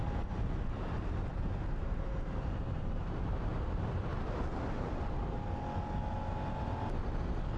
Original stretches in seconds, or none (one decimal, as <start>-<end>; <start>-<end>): 4.1-7.6